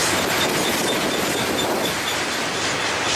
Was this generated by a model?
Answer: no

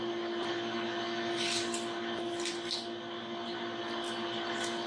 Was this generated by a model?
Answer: no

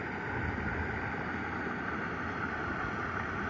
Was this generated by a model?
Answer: no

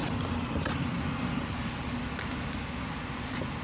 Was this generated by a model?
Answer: no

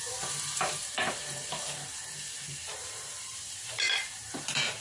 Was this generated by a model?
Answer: yes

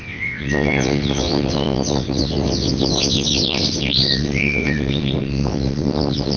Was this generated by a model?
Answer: yes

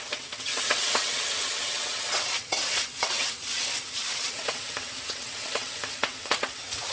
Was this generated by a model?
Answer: yes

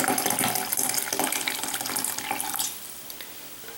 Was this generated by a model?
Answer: no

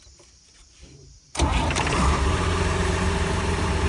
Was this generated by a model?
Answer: yes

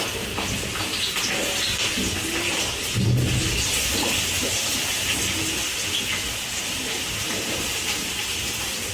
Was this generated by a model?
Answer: no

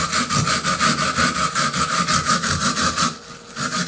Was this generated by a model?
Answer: no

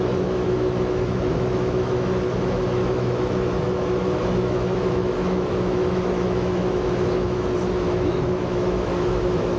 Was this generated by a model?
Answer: yes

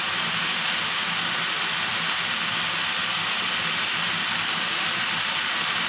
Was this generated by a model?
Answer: no